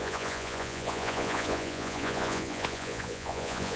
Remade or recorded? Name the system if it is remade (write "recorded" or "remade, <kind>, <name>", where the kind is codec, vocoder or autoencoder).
remade, vocoder, Vocos